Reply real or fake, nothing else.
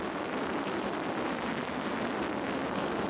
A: real